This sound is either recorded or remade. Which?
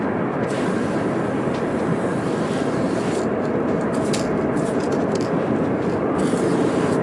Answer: remade